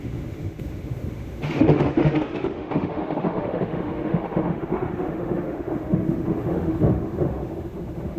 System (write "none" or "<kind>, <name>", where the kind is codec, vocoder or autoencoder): autoencoder, DAC-VAE